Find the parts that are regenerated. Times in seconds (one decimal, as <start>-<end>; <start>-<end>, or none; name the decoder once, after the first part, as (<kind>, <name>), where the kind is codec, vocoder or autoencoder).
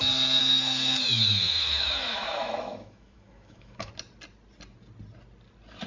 0.4-3.9 (autoencoder, DAC-VAE)